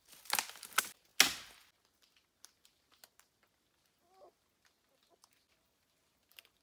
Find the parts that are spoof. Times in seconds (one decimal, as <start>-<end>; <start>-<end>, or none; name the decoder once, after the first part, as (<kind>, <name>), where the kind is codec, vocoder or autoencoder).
none